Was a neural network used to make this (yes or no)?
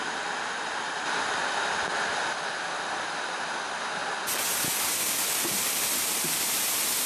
no